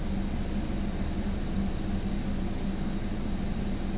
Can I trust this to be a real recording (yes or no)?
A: yes